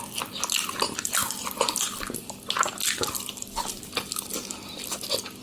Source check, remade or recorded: recorded